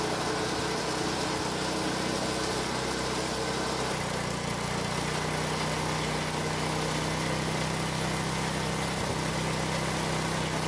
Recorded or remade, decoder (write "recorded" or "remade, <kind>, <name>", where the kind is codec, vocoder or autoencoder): recorded